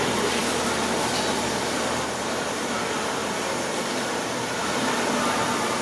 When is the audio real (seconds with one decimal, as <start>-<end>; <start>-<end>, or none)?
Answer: 0.0-5.8